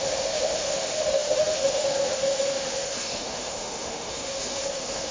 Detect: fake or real fake